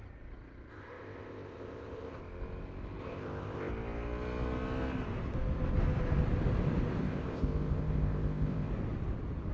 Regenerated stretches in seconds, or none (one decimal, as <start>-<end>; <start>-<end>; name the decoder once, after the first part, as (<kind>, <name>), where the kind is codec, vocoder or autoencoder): 0.7-2.2 (codec, ZipCodec); 3.0-3.7; 7.0-8.7